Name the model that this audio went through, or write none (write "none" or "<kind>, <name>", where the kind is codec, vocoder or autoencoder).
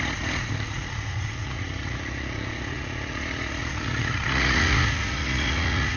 vocoder, Vocos